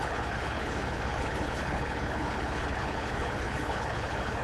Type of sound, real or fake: fake